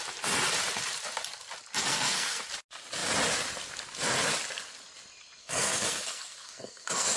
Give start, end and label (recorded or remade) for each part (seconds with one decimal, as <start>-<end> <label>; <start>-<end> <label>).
0.0-1.8 recorded; 1.8-2.4 remade; 2.4-5.4 recorded; 5.4-7.2 remade